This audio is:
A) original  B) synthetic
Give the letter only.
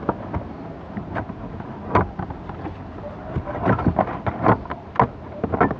A